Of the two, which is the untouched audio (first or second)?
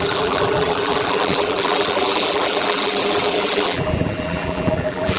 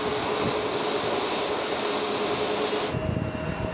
second